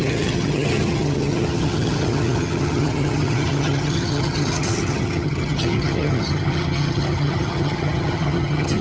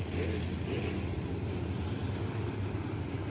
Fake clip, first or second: first